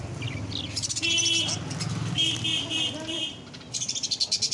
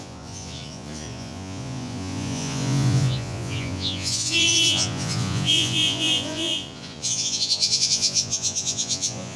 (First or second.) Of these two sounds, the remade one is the second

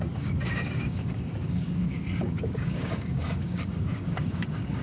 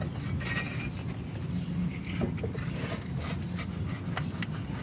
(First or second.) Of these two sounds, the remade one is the first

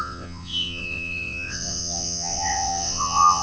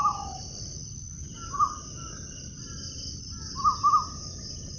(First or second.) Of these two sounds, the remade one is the first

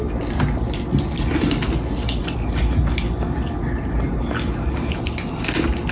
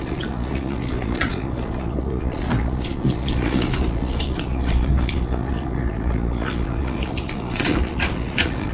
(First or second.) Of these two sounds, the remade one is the second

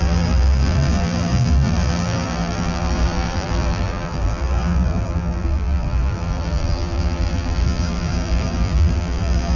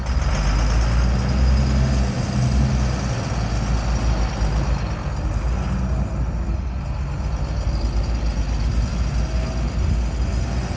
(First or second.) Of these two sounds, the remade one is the first